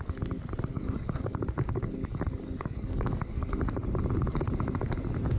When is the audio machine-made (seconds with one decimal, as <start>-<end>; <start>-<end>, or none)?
0.7-3.7